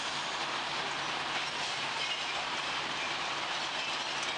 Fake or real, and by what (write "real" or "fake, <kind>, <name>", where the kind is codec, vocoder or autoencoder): real